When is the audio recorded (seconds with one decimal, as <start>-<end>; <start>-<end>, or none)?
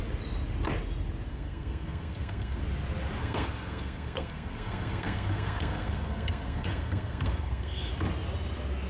0.0-1.3; 2.6-3.2; 7.9-8.9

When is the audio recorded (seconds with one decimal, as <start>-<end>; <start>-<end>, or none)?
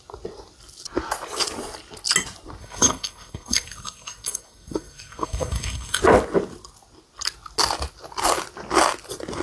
0.0-2.6; 6.0-9.4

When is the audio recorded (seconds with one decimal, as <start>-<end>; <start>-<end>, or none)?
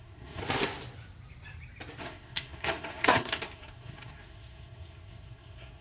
0.4-2.0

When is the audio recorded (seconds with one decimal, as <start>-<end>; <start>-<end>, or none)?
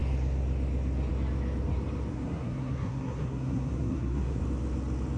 0.0-2.1; 4.4-5.2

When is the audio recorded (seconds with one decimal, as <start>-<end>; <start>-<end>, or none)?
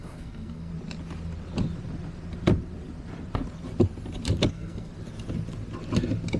0.7-4.5; 4.9-6.4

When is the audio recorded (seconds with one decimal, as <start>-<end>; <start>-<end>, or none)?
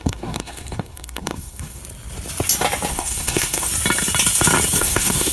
1.8-2.9; 3.7-4.8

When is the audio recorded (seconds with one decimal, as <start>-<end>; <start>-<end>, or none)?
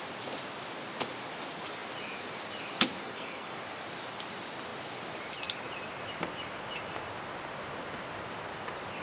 0.0-3.0; 3.6-9.0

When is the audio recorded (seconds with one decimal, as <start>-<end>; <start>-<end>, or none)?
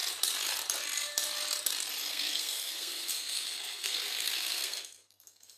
0.0-2.1